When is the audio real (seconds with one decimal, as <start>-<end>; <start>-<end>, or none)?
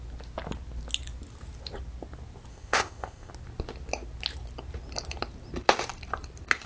0.0-2.5; 3.3-6.7